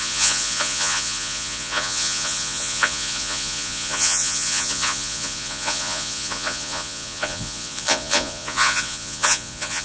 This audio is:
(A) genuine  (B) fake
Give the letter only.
B